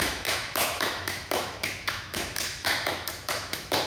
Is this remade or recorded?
remade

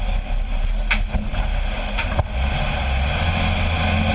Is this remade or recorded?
recorded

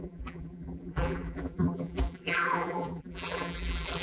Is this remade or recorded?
remade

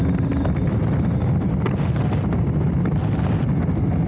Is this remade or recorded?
recorded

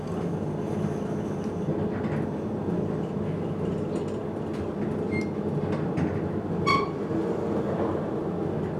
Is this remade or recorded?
recorded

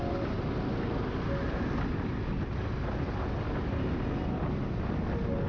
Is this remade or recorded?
recorded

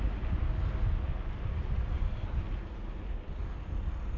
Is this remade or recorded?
recorded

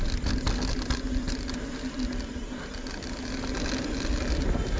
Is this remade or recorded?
recorded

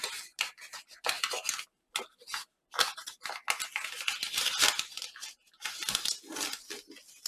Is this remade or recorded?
recorded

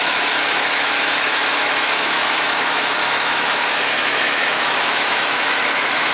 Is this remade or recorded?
remade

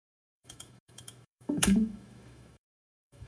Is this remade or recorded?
remade